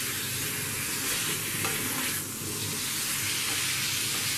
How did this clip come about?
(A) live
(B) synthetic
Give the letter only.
A